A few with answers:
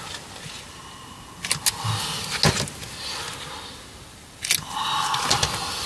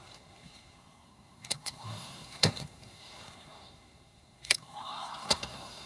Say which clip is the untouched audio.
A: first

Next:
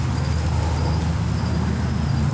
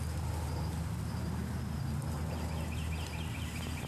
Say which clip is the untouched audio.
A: first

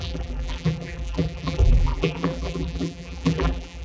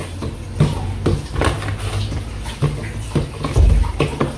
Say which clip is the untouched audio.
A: second